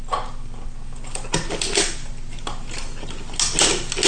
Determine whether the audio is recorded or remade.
recorded